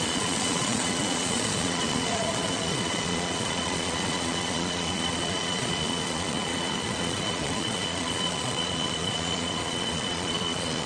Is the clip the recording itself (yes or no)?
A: no